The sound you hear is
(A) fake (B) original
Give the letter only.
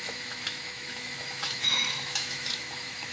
A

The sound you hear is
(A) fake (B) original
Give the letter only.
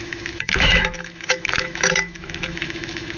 A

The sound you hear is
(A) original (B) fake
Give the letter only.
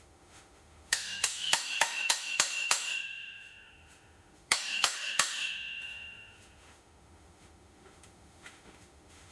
B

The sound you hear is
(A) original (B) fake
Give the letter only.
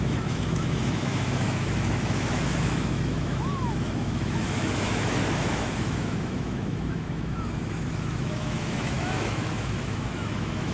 B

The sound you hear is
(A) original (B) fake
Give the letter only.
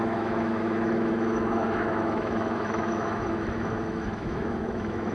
B